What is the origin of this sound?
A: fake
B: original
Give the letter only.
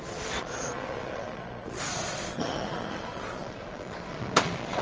A